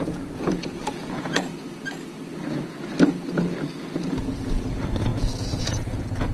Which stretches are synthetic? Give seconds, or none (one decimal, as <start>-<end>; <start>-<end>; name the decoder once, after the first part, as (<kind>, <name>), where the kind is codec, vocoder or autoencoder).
0.0-1.5 (vocoder, Vocos); 4.2-6.3